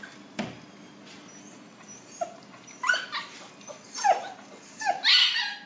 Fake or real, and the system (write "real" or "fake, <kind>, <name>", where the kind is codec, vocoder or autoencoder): real